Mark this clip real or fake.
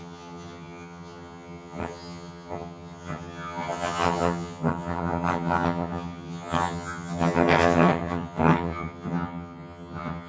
fake